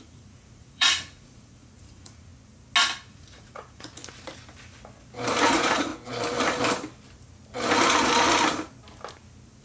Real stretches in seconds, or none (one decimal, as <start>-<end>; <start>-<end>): 2.3-3.1; 4.0-5.4; 5.9-9.6